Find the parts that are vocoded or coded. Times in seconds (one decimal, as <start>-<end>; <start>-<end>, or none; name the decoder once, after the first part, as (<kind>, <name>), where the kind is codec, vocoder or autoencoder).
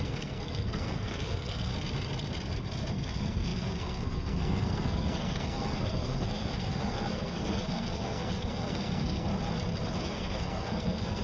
0.0-1.7 (codec, SNAC); 2.9-9.3; 10.0-11.2